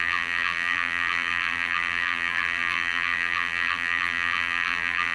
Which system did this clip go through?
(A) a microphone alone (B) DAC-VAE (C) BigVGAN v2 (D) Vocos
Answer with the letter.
C